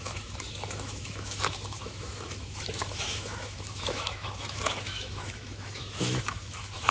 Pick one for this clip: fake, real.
fake